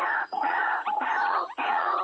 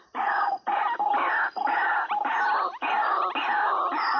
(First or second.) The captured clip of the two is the second